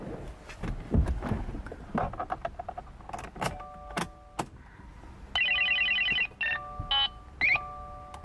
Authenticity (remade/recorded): recorded